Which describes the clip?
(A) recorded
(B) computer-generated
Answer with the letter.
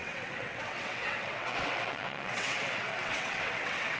B